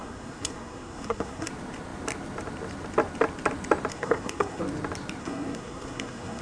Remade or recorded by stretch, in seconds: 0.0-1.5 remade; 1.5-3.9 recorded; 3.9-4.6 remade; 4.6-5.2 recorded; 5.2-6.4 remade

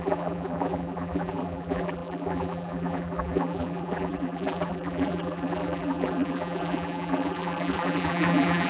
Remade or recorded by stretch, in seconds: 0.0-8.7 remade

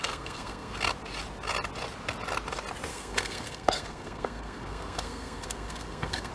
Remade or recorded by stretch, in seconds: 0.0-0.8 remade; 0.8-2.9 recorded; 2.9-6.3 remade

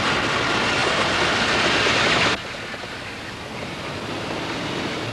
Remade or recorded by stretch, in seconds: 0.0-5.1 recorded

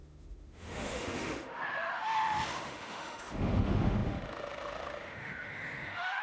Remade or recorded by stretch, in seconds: 0.0-6.2 remade